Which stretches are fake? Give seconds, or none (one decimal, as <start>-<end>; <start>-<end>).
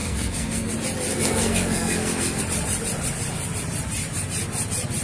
0.0-0.7; 1.1-2.4